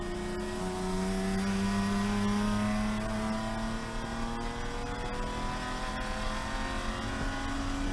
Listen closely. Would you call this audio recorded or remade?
recorded